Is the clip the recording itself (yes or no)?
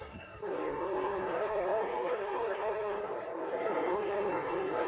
no